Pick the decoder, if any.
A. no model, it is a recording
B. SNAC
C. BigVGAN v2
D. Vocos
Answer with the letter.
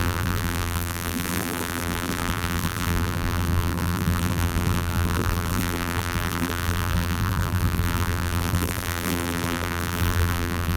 C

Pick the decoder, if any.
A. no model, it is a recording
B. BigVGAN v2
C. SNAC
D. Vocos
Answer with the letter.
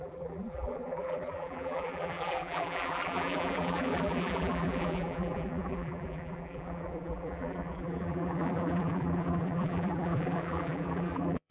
B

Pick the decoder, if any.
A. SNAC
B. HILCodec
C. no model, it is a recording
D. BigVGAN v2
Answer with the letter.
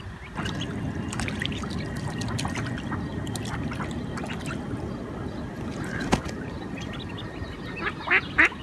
C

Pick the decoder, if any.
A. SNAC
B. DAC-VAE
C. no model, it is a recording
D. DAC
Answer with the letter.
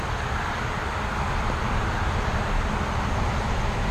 C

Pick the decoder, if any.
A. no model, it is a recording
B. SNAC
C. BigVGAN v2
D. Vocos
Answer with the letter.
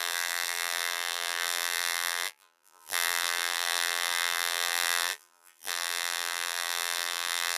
C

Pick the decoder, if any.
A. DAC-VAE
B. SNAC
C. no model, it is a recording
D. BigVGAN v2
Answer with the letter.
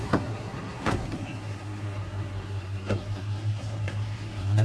B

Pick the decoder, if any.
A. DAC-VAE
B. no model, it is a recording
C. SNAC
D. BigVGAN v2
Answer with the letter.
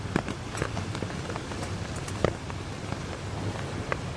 B